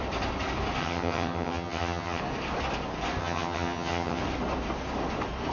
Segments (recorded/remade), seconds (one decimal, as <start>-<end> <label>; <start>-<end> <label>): 0.0-0.8 recorded; 0.8-2.2 remade; 2.2-3.2 recorded; 3.2-4.2 remade; 4.2-5.5 recorded

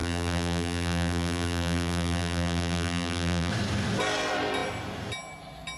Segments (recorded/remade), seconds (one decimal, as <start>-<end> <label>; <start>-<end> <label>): 0.0-3.5 remade; 3.5-5.8 recorded

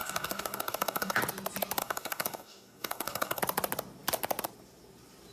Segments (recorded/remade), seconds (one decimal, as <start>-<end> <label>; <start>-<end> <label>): 0.0-1.2 remade; 1.2-1.8 recorded; 1.8-3.4 remade; 3.4-5.3 recorded

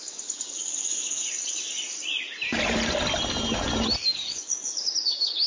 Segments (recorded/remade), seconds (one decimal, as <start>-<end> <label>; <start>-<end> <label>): 0.0-1.2 remade; 1.2-4.0 recorded; 4.0-5.5 remade